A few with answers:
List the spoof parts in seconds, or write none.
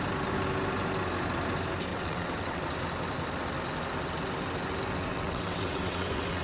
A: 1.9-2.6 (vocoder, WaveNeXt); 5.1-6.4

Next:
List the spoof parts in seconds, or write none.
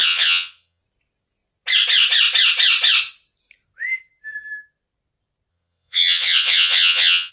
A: 0.0-0.8 (vocoder, WaveNeXt); 5.5-7.3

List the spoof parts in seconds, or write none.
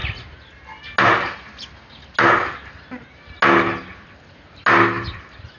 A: none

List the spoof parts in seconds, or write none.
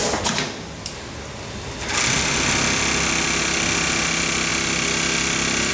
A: none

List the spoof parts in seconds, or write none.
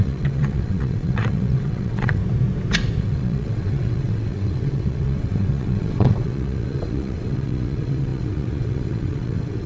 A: 0.0-2.2 (vocoder, WaveNeXt); 3.0-9.7